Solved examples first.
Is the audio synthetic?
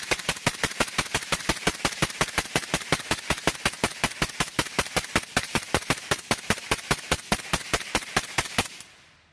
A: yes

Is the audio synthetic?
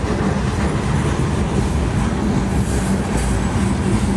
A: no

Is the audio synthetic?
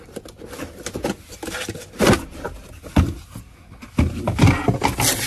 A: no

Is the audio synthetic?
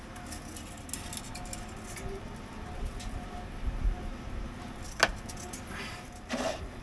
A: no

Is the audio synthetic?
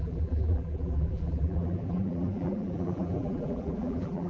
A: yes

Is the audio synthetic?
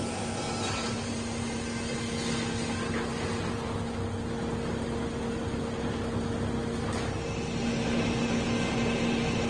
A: no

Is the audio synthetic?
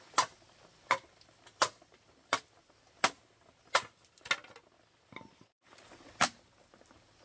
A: no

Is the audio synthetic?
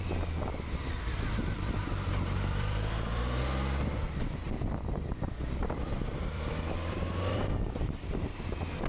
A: yes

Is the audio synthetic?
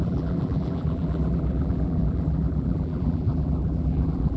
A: yes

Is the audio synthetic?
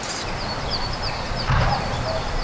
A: yes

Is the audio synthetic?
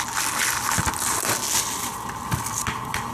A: no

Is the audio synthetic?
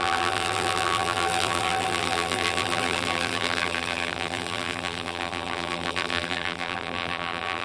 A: yes